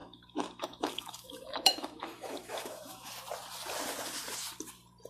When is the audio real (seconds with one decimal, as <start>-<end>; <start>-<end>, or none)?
3.1-5.1

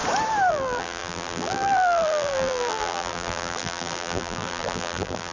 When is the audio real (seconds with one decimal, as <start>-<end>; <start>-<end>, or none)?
0.0-0.5